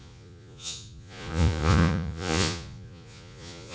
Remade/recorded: remade